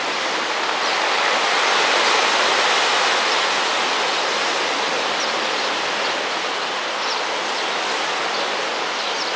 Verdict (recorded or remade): recorded